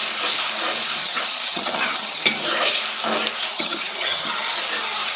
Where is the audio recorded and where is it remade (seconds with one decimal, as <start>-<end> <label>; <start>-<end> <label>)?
0.0-1.0 recorded; 1.0-2.2 remade; 2.2-3.5 recorded; 3.5-4.5 remade; 4.5-5.2 recorded